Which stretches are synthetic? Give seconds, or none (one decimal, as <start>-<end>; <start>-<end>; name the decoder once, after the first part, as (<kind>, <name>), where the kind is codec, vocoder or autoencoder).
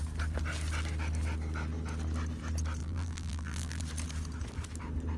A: 2.8-3.8 (vocoder, BigVGAN v2)